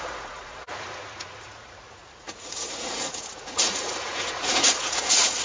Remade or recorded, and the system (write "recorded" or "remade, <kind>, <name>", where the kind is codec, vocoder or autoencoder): remade, vocoder, Vocos